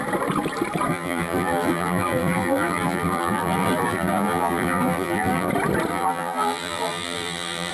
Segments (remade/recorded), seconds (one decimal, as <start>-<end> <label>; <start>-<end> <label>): 0.0-0.9 recorded; 0.9-5.5 remade; 5.5-5.9 recorded; 5.9-7.7 remade